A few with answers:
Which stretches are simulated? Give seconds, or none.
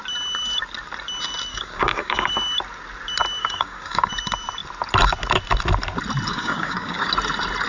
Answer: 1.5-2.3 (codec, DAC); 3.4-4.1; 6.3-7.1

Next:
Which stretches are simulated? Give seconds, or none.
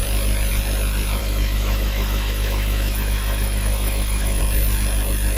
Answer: 1.2-4.4 (autoencoder, DAC-VAE)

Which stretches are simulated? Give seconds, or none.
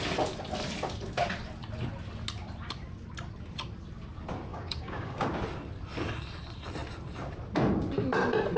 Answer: 4.5-5.3 (codec, DAC)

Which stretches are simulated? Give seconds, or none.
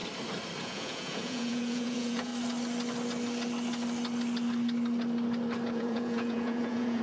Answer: 0.6-2.3 (vocoder, Vocos); 5.7-7.0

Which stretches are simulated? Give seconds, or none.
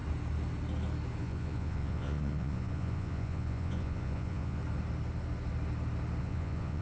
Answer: 1.2-4.6 (vocoder, Vocos); 6.2-6.8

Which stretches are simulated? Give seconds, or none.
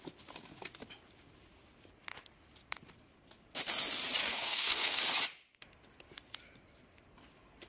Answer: 4.2-5.0 (codec, SNAC)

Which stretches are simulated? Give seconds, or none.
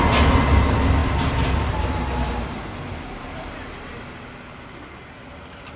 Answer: 1.0-4.0 (vocoder, BigVGAN v2)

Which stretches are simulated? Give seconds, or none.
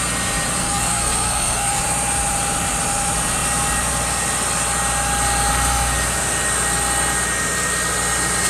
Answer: 0.6-1.8 (codec, SNAC)